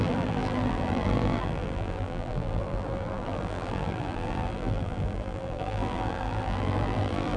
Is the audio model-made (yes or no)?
yes